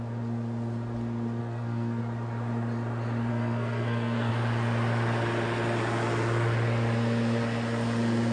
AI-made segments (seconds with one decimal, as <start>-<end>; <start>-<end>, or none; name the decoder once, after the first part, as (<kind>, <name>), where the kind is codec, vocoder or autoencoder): 1.4-2.0 (codec, SNAC); 3.3-4.3